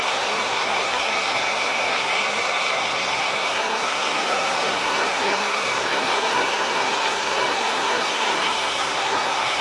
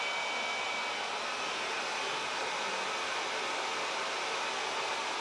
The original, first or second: second